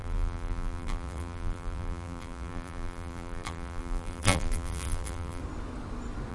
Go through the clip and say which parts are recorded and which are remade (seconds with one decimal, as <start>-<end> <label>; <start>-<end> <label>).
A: 0.0-5.4 remade; 5.4-6.3 recorded